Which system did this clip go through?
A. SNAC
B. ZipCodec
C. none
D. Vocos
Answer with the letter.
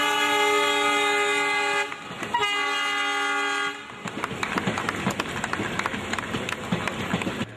C